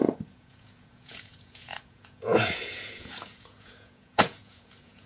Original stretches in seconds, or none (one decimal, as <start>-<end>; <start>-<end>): none